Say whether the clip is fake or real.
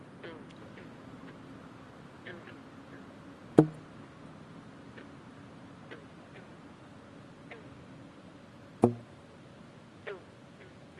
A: real